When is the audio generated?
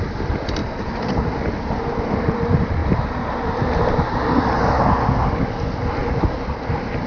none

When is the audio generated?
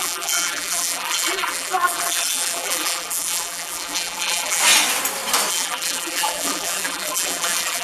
0.0-4.6; 5.5-7.8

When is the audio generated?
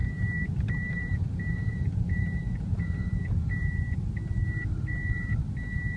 0.0-3.6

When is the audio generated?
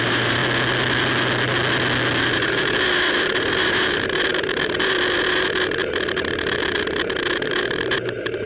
0.0-0.4; 2.2-8.5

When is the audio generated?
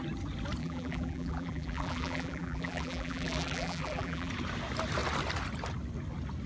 0.6-4.3